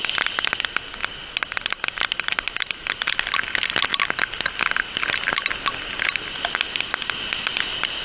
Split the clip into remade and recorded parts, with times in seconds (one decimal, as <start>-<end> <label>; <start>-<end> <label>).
0.0-8.0 recorded